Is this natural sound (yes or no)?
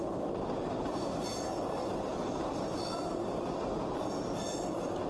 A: yes